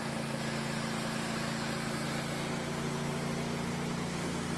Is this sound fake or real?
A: real